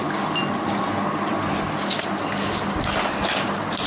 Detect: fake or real real